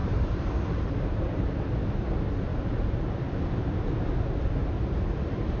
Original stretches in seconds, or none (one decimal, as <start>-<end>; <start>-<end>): 1.5-5.6